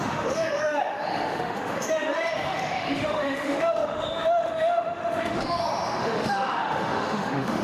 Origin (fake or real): fake